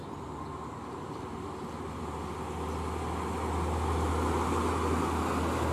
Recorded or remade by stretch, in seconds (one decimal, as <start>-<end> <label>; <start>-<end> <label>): 0.0-5.7 recorded